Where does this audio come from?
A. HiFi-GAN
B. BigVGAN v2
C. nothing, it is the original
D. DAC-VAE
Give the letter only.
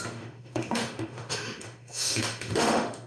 D